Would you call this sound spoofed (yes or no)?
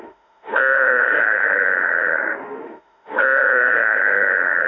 yes